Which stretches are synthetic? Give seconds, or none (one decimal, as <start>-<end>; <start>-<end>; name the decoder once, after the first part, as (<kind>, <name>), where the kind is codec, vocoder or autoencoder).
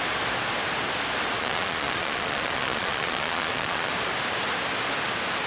1.4-3.9 (vocoder, Vocos)